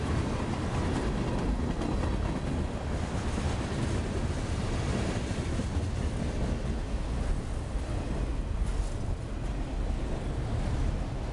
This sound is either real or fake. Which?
real